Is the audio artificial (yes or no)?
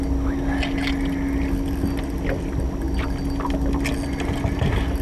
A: no